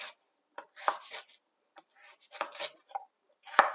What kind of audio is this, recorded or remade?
recorded